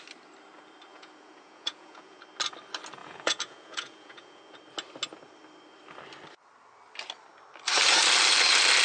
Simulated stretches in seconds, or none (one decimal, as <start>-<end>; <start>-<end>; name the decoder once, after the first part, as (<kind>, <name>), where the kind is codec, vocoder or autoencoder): 0.9-2.2 (vocoder, Vocos); 3.0-4.6